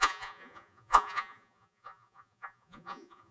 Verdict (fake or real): fake